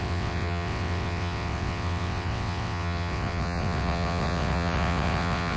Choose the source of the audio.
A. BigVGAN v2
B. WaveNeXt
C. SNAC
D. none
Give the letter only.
B